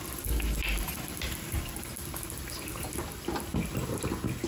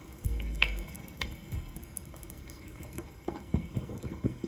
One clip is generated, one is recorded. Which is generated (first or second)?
second